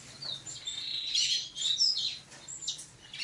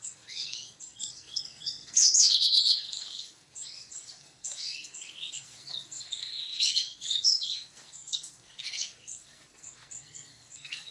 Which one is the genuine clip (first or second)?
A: first